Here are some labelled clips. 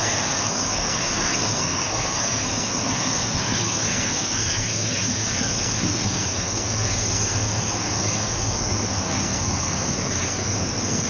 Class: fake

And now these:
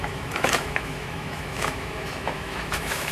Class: fake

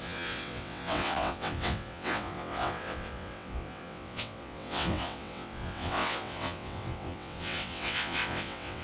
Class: fake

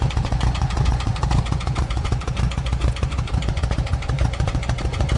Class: fake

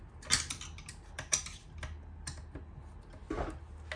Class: real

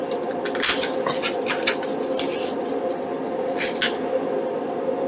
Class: real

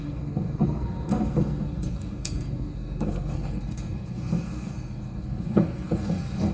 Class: fake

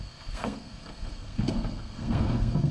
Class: fake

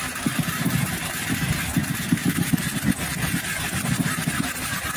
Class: real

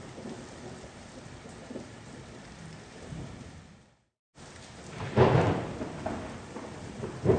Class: fake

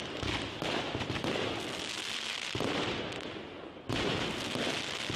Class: real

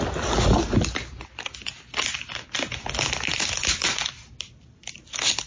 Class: real